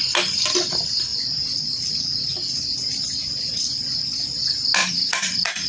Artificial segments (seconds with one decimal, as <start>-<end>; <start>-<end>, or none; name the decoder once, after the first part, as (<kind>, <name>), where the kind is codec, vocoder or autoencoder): 4.8-5.7 (vocoder, Vocos)

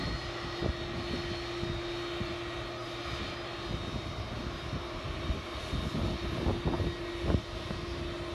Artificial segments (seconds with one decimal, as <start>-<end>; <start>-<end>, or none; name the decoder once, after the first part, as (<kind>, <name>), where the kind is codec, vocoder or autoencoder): none

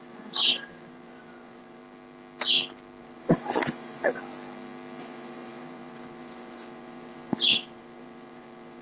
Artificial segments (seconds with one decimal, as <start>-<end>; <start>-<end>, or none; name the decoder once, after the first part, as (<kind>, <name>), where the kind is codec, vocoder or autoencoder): 0.0-1.8 (vocoder, Vocos); 3.0-4.2; 5.0-8.8

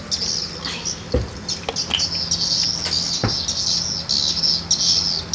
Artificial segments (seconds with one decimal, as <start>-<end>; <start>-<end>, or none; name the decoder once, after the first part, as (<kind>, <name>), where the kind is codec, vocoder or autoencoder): none

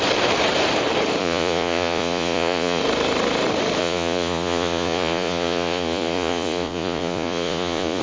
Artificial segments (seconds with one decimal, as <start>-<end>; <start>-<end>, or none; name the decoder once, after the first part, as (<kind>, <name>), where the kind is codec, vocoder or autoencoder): 1.2-2.8 (vocoder, Vocos); 3.8-8.0

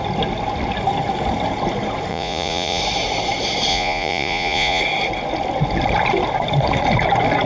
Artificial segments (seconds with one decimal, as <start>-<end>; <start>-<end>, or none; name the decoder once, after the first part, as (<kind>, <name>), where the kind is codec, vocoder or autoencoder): 2.1-2.8 (vocoder, Vocos); 3.7-4.8

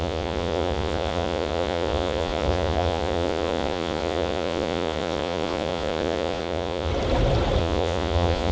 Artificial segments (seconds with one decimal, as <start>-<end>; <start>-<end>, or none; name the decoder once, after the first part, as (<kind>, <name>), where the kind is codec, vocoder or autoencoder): 0.0-6.9 (vocoder, Vocos); 7.6-8.5